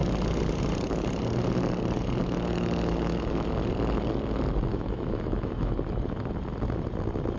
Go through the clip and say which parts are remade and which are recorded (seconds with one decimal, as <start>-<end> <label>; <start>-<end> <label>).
0.0-2.2 recorded; 2.2-3.5 remade; 3.5-4.7 recorded; 4.7-5.7 remade; 5.7-7.4 recorded